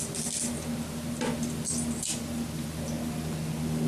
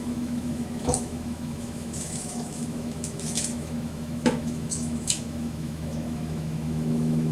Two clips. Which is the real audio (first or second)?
first